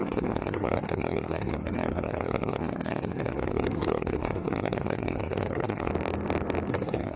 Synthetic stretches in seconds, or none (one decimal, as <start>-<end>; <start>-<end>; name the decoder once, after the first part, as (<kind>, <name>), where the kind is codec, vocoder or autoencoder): 0.0-5.9 (codec, SNAC); 6.7-7.2

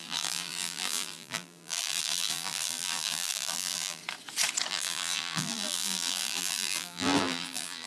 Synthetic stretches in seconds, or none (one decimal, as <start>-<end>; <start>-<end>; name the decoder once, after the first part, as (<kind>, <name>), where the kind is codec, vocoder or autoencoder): 0.0-4.0 (vocoder, BigVGAN v2); 4.7-7.9

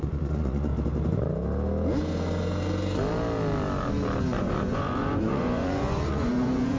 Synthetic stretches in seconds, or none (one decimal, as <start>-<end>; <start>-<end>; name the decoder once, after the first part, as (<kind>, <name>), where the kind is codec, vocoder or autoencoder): 0.0-0.7 (vocoder, Vocos); 4.2-6.8